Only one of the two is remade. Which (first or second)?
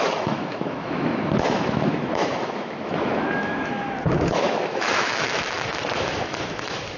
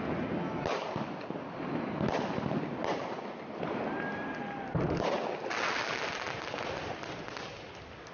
first